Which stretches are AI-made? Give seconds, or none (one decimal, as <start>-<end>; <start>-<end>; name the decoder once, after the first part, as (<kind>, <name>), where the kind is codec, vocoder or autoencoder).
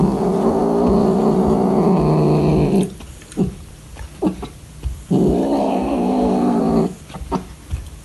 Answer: 5.6-6.6 (codec, SNAC)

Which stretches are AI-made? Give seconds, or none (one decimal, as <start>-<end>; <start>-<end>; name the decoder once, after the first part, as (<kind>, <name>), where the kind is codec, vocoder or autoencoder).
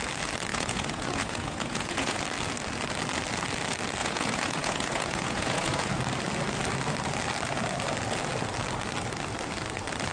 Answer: 0.5-2.2 (vocoder, Vocos); 4.0-5.9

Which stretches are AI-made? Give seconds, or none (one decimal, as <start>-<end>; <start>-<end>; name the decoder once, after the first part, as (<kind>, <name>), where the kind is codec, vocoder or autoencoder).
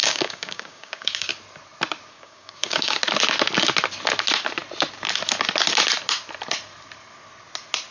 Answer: 0.0-1.3 (codec, DAC); 2.1-3.0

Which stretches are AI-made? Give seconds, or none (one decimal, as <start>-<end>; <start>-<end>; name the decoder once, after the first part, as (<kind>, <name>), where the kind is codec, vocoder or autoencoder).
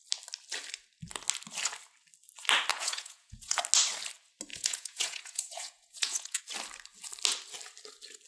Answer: 2.7-3.6 (vocoder, Vocos); 4.5-6.4